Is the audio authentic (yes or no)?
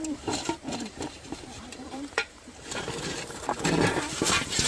no